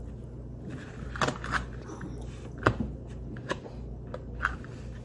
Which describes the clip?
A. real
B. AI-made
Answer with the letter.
A